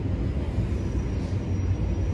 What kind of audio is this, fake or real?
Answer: real